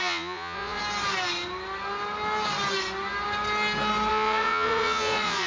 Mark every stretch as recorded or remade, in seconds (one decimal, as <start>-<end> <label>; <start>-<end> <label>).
0.0-0.8 remade; 0.8-4.1 recorded; 4.1-5.5 remade